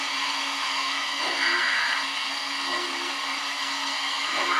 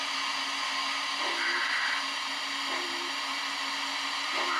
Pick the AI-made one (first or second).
first